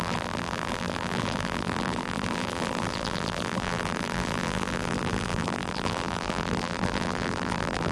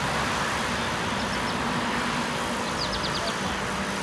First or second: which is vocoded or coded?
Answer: first